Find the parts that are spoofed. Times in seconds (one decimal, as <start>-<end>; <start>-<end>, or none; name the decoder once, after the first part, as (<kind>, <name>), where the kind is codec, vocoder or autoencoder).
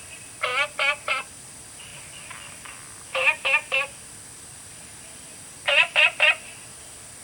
0.0-0.5 (vocoder, BigVGAN v2); 1.5-1.9; 4.5-7.2